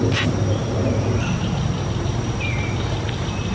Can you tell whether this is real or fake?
real